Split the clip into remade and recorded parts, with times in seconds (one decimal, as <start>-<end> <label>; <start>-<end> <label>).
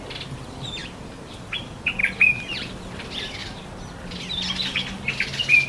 0.0-0.8 recorded; 0.8-1.4 remade; 1.4-2.0 recorded; 2.0-2.7 remade; 2.7-5.7 recorded